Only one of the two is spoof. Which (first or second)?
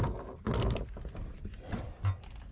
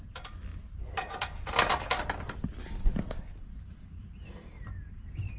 second